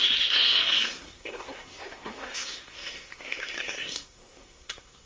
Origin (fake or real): fake